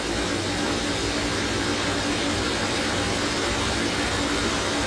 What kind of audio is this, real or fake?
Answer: real